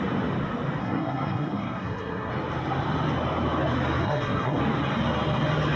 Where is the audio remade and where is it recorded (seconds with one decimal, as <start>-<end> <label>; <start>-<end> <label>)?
0.0-0.8 recorded; 0.8-2.3 remade; 2.3-4.0 recorded; 4.0-4.6 remade; 4.6-5.8 recorded

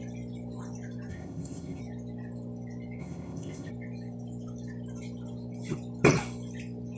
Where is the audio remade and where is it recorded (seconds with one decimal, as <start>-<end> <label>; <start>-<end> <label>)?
0.0-1.1 recorded; 1.1-1.8 remade; 1.8-3.0 recorded; 3.0-3.7 remade; 3.7-7.0 recorded